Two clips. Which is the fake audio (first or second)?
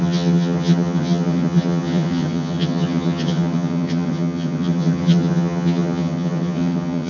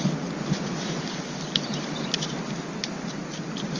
first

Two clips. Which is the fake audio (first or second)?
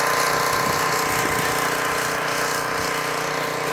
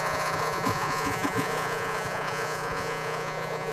second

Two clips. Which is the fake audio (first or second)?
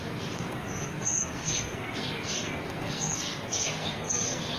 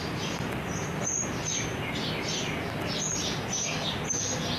first